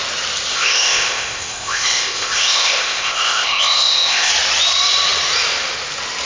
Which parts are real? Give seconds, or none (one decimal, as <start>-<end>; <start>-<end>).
0.0-0.5; 4.3-6.3